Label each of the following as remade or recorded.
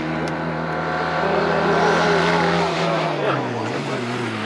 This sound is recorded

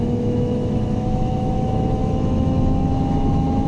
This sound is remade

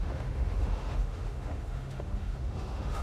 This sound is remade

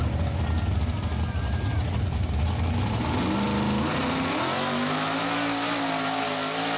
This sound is recorded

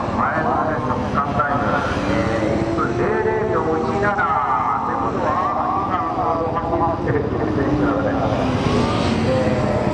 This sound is recorded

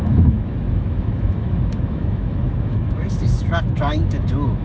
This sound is remade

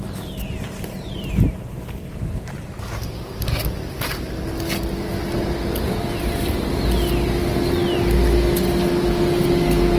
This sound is recorded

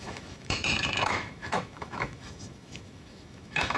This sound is remade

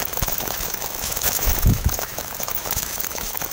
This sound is remade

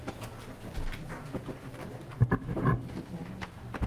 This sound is recorded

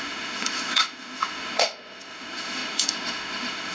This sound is remade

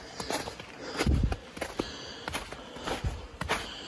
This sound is recorded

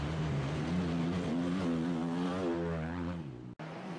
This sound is recorded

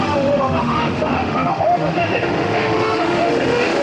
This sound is remade